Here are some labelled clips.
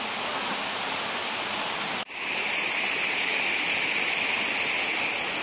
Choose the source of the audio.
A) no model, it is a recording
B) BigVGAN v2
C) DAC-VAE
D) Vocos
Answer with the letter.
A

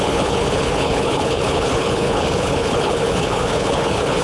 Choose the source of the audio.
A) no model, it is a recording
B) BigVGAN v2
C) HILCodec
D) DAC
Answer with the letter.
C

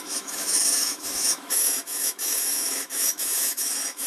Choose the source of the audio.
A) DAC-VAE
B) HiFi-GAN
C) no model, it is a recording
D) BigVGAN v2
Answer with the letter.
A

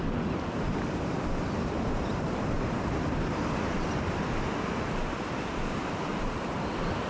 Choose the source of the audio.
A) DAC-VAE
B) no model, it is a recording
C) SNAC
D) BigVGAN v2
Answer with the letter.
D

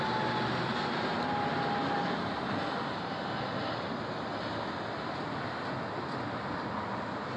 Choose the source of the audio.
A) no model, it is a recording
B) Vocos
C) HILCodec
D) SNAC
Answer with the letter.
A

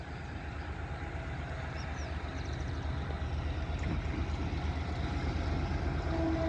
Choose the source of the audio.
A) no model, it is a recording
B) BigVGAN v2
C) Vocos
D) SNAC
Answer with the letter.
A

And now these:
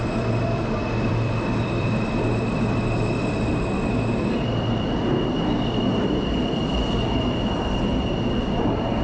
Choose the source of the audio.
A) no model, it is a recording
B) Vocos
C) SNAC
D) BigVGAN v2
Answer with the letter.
D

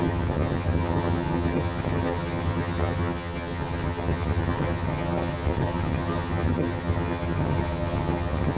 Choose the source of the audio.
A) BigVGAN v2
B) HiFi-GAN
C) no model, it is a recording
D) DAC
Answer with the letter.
B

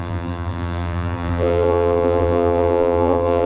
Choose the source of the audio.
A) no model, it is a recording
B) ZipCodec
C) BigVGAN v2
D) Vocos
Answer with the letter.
C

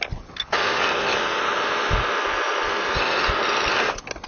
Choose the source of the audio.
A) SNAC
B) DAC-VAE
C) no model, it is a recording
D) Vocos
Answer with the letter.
C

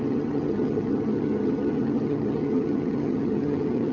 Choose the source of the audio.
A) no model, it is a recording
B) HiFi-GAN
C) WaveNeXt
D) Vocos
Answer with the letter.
B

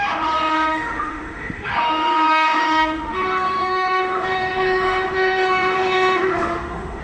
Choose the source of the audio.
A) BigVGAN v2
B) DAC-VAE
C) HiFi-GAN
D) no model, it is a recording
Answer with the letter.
B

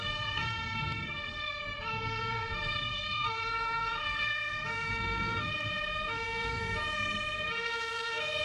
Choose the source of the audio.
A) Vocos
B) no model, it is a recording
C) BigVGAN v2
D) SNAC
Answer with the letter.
D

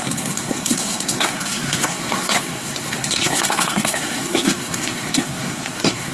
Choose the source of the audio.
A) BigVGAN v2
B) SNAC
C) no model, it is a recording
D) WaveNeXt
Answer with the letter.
B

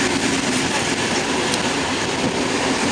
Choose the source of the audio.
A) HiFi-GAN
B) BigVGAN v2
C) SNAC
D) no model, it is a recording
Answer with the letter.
B